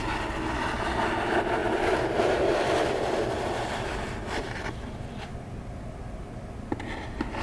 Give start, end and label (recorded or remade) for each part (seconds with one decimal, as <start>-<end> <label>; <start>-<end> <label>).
0.0-1.6 recorded; 1.6-4.9 remade; 4.9-7.4 recorded